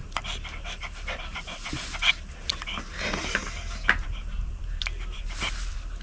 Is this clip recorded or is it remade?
recorded